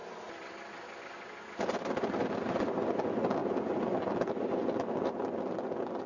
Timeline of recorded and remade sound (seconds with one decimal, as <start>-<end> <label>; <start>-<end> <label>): 0.0-1.0 remade; 1.0-3.4 recorded; 3.4-4.3 remade; 4.3-6.1 recorded

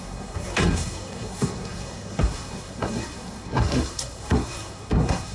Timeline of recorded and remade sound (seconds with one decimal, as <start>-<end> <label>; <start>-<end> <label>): 0.0-5.3 remade

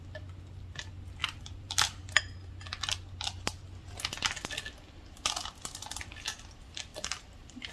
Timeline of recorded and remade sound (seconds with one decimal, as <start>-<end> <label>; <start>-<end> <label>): 0.0-1.2 recorded; 1.2-2.2 remade; 2.2-6.9 recorded; 6.9-7.7 remade

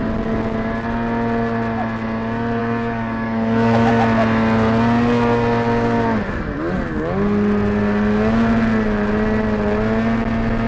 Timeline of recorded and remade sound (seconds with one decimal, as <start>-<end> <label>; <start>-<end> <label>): 0.0-2.6 recorded; 2.6-3.9 remade; 3.9-10.7 recorded

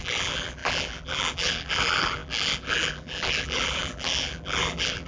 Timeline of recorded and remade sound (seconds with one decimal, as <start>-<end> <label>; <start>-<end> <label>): 0.0-5.1 remade